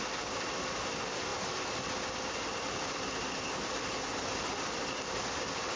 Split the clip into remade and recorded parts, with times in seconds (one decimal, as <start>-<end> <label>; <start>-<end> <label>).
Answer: 0.0-5.8 recorded